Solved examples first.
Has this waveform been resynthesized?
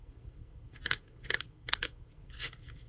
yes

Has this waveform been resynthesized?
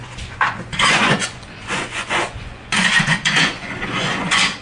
yes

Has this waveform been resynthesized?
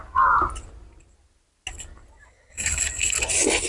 no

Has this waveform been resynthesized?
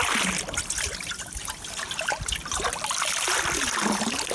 no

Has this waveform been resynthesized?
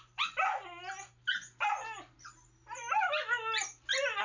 no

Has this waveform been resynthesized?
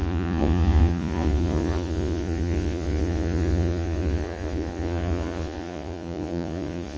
yes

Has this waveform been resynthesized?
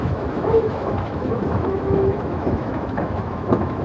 yes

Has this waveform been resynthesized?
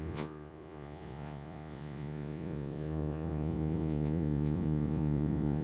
yes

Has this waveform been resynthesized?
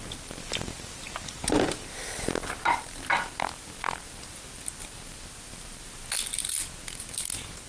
no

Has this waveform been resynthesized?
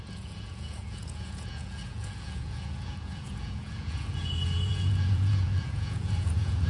yes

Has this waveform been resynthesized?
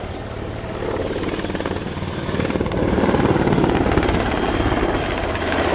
yes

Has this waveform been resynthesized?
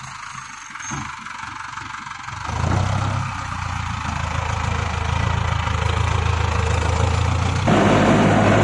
no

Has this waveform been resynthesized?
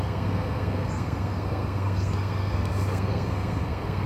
yes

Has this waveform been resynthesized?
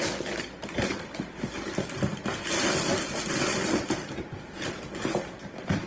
no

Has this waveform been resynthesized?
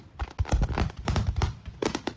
no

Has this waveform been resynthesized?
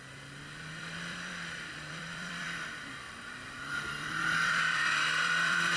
yes